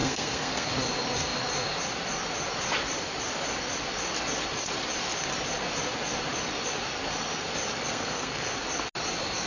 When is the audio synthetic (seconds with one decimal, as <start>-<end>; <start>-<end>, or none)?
0.0-0.7; 7.9-8.5